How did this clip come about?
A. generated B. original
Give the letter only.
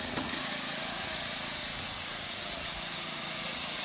A